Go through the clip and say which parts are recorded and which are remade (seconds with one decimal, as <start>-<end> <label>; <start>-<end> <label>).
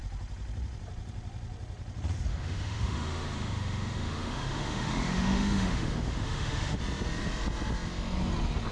0.0-2.3 recorded; 2.3-6.8 remade; 6.8-8.7 recorded